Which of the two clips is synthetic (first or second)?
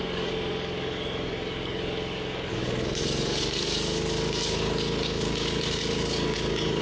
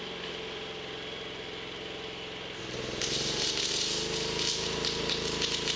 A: first